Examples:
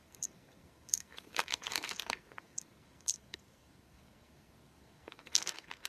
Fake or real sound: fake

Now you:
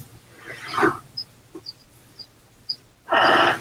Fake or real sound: real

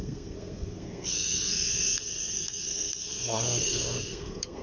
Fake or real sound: fake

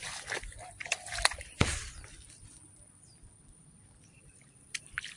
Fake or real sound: fake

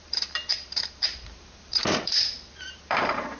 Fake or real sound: fake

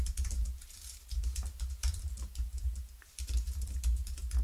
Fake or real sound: fake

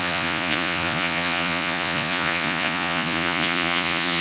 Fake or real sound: fake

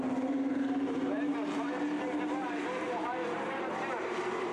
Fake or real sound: fake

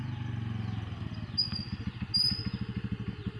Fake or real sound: real